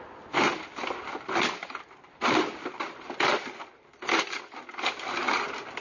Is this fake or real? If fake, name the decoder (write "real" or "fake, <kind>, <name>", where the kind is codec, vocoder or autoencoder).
real